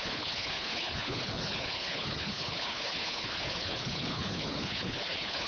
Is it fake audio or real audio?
fake